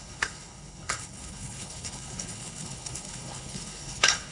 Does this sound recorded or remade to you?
remade